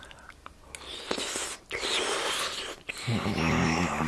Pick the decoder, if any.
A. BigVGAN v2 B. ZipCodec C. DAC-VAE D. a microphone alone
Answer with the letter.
D